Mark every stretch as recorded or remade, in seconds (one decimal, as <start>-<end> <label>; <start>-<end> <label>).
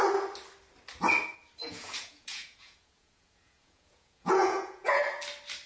0.0-1.6 recorded; 1.6-5.0 remade; 5.0-5.7 recorded